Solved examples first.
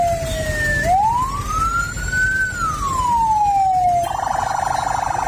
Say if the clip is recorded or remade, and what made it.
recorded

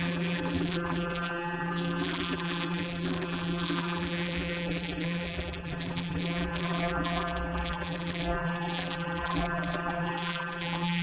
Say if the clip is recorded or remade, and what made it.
remade, vocoder, BigVGAN v2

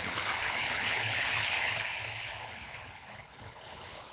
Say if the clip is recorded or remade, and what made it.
remade, codec, HILCodec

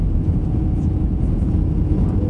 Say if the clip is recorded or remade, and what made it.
remade, vocoder, Vocos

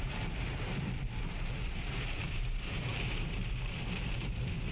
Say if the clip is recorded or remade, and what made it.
remade, vocoder, BigVGAN v2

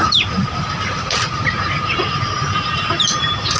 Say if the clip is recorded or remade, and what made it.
remade, vocoder, BigVGAN v2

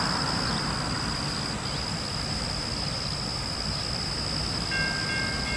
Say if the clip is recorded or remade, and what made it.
recorded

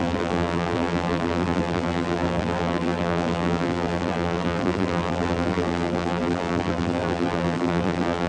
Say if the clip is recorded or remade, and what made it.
remade, vocoder, BigVGAN v2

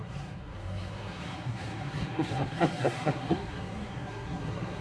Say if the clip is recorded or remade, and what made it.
remade, codec, SNAC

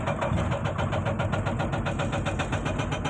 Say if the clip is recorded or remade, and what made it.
recorded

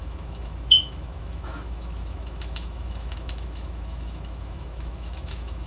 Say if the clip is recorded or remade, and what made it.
remade, autoencoder, DAC-VAE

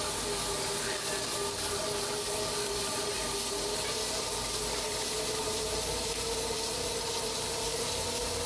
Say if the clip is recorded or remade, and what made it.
recorded